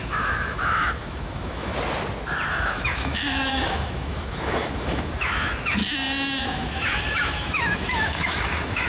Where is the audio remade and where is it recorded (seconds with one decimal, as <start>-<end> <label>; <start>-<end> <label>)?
0.0-1.7 remade; 1.7-2.5 recorded; 2.5-5.8 remade; 5.8-6.4 recorded; 6.4-8.9 remade